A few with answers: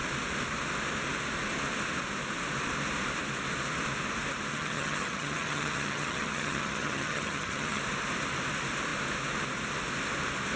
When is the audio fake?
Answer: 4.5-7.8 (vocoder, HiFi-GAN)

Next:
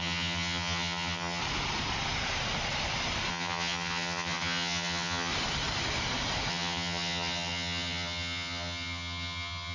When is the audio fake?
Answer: 0.0-1.4 (vocoder, HiFi-GAN); 3.3-5.3; 6.5-9.7

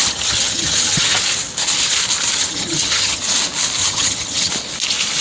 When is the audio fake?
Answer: 0.0-1.2 (vocoder, HiFi-GAN); 2.4-3.2; 3.8-4.5

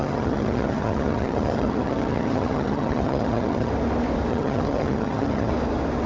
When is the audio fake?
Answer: 0.0-3.7 (vocoder, HiFi-GAN); 4.3-5.5